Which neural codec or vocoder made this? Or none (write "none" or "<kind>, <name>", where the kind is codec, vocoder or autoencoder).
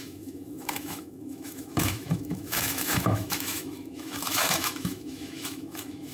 autoencoder, DAC-VAE